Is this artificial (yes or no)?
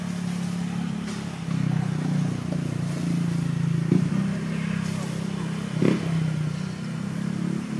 no